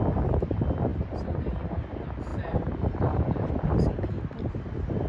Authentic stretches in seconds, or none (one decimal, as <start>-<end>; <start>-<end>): 0.0-2.3; 3.5-5.1

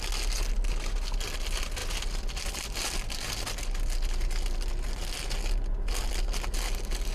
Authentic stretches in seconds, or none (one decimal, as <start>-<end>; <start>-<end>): 0.0-7.1

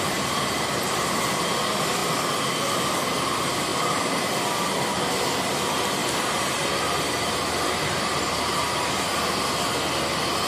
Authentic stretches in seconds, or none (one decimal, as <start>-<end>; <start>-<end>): 2.0-2.7

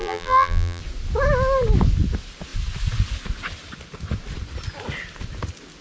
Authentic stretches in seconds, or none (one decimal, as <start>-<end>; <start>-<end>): 0.8-5.8

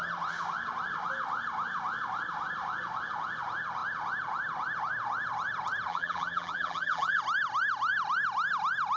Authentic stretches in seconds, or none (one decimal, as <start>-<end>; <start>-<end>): 0.0-5.9; 7.2-9.0

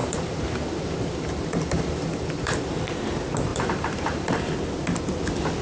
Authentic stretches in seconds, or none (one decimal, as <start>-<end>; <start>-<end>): 2.8-3.5; 4.4-5.6

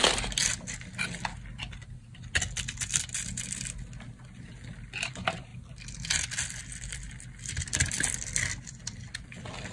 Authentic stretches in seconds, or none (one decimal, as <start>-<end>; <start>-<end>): 0.4-1.6; 5.5-6.6